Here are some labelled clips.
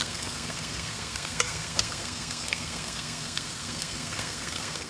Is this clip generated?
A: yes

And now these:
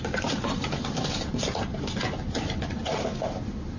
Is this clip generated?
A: no